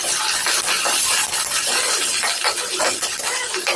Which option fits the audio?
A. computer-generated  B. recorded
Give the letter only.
A